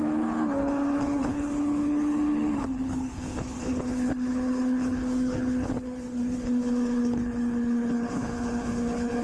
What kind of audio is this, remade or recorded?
remade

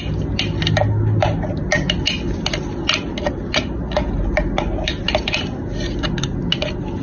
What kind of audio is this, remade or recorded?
recorded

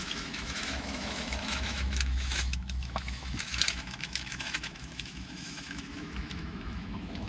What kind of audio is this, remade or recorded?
remade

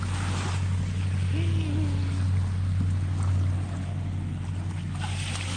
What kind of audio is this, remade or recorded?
recorded